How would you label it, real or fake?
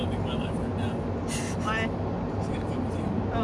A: real